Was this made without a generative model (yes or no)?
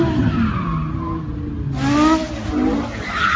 yes